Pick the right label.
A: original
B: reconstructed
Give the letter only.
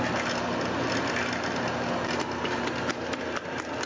A